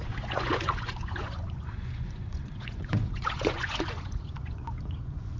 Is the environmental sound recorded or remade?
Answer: remade